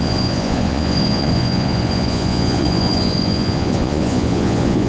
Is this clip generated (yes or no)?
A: yes